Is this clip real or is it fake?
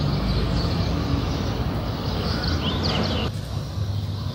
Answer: real